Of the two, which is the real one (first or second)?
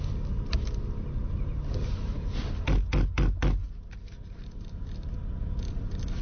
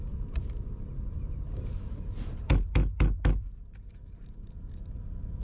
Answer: first